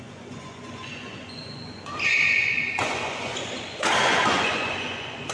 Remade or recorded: remade